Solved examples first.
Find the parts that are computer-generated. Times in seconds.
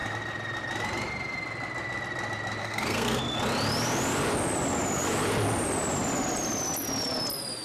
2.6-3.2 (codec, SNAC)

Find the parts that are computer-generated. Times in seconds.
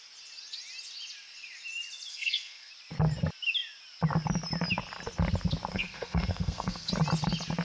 2.1-2.7 (codec, SNAC); 5.7-6.9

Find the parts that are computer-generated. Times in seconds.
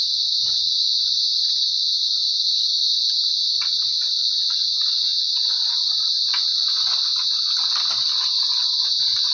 none